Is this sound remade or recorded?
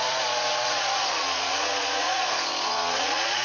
remade